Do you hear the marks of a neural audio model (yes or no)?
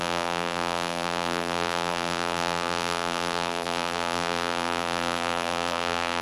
yes